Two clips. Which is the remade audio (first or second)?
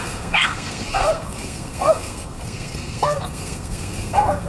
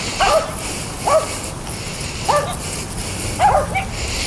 first